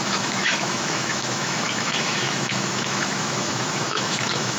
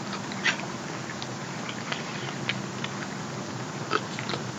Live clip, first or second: second